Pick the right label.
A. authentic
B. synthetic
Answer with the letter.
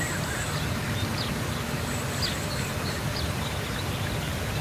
A